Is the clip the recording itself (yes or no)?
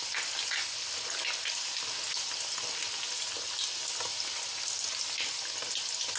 yes